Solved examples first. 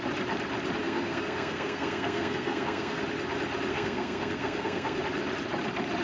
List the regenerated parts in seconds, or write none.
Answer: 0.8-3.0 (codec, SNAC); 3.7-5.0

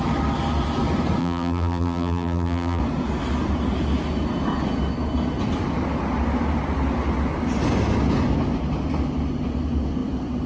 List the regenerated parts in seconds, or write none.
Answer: 1.2-2.8 (vocoder, BigVGAN v2)

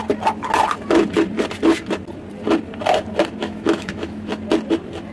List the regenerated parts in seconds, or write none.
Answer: 3.4-4.3 (autoencoder, DAC-VAE)